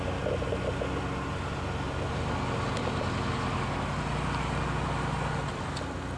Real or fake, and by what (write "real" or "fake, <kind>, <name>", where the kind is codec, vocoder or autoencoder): real